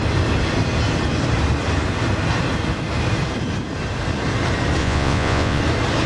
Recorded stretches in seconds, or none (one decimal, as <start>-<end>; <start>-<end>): 0.0-4.8; 5.6-6.1